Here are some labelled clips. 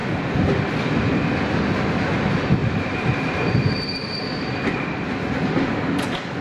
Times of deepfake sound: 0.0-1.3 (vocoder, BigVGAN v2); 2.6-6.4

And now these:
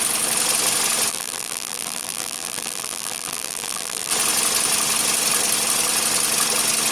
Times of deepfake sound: 1.1-4.1 (vocoder, BigVGAN v2)

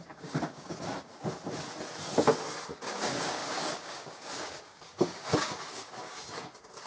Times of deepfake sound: 0.0-1.1 (codec, DAC); 2.8-6.9